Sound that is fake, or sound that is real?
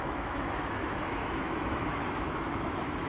fake